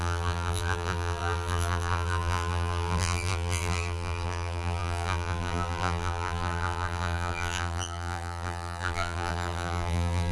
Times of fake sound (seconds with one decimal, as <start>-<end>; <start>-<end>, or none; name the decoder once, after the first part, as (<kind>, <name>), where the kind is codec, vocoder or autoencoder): 0.0-10.3 (vocoder, BigVGAN v2)